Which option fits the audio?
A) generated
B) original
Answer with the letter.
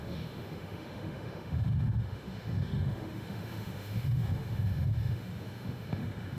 A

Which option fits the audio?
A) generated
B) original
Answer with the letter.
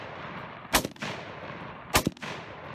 B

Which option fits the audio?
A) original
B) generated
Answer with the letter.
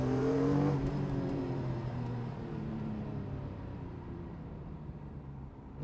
B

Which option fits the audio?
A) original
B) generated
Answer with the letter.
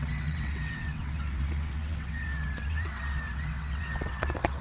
B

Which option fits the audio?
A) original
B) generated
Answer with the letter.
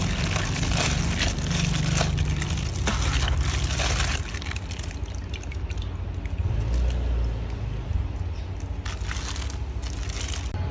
A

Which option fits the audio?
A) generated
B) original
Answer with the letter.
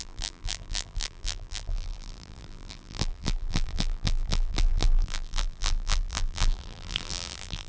A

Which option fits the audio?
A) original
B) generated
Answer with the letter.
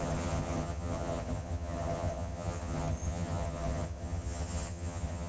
B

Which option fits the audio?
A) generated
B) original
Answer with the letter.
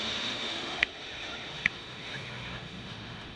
A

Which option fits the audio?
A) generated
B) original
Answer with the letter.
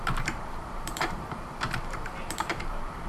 A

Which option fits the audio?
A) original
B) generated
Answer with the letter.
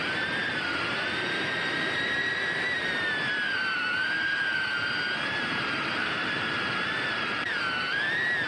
B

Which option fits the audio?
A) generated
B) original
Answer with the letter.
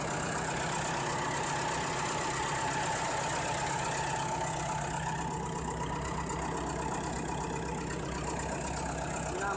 B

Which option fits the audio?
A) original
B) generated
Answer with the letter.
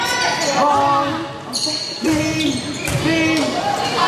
A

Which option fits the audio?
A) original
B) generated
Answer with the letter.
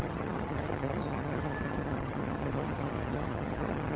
B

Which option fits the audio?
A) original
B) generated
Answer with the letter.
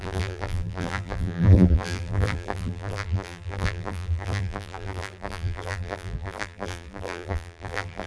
B